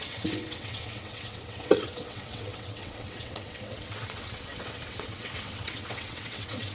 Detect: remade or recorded remade